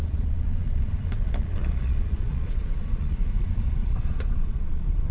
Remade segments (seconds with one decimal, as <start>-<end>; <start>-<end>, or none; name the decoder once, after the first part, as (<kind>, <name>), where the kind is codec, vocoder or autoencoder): 0.0-5.1 (vocoder, Vocos)